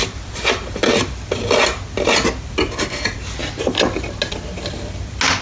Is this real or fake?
real